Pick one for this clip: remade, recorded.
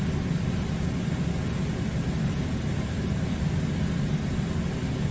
recorded